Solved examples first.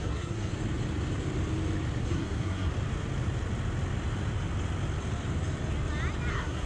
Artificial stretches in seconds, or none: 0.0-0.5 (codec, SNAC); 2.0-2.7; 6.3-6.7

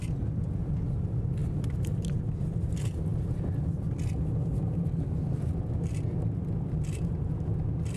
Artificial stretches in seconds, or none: none

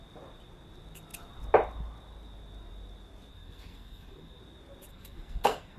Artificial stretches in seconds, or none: 3.3-4.4 (codec, SNAC); 4.9-5.8